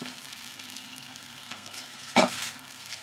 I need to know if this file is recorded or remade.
remade